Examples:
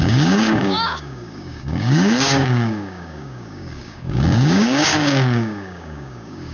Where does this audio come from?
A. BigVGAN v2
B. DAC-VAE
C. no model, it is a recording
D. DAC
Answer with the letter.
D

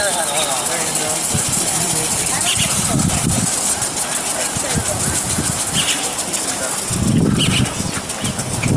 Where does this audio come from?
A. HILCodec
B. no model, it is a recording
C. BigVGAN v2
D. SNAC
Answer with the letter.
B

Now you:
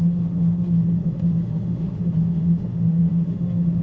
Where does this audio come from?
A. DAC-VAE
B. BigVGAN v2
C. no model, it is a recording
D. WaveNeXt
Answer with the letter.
A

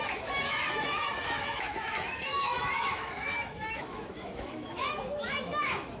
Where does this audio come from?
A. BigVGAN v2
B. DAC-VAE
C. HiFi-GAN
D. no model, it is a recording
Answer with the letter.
B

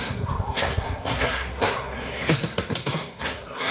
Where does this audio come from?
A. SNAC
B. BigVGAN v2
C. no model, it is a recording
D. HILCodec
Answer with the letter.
A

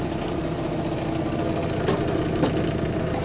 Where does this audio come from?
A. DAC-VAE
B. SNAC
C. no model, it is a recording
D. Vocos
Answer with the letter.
C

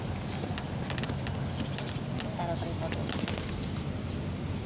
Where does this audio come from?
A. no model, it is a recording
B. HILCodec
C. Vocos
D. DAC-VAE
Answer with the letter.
A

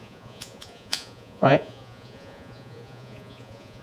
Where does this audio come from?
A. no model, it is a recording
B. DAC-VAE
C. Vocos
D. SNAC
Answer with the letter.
C